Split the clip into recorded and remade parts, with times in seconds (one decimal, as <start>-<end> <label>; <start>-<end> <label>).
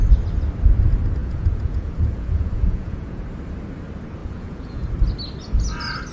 0.0-1.2 recorded; 1.2-3.2 remade; 3.2-4.2 recorded; 4.2-4.9 remade; 4.9-6.1 recorded